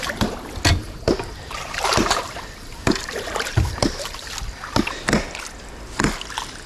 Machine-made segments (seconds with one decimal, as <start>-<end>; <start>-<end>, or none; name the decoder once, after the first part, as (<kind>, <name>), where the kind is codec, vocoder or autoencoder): 0.8-4.3 (vocoder, BigVGAN v2)